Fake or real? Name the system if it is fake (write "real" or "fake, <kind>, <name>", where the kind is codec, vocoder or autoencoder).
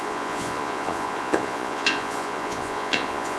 fake, vocoder, Vocos